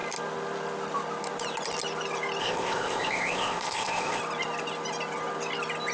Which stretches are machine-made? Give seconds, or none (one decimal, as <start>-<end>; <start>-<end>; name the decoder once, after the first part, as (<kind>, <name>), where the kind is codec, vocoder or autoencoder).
2.4-4.2 (codec, ZipCodec)